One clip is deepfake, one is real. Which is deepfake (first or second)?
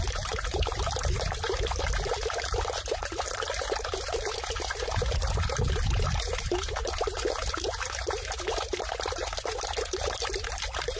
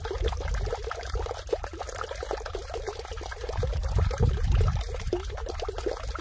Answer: first